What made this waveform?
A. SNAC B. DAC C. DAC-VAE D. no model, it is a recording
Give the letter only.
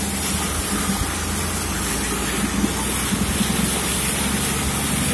D